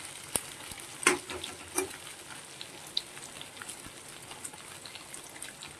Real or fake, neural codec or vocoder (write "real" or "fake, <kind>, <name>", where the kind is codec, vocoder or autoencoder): real